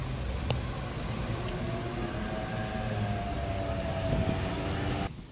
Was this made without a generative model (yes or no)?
yes